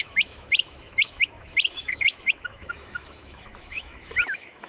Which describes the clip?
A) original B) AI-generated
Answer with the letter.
B